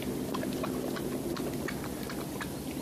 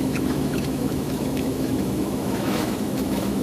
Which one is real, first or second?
first